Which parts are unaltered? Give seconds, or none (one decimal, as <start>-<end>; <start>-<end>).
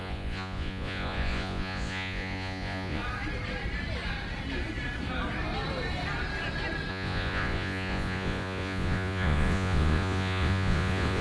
3.0-6.9